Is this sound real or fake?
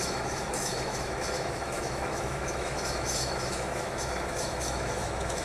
fake